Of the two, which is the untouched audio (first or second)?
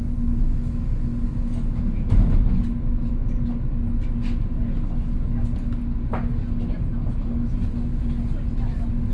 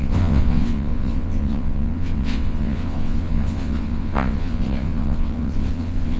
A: first